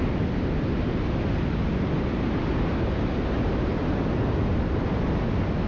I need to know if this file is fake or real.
real